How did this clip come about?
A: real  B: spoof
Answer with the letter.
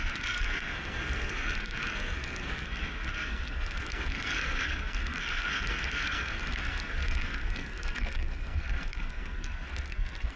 B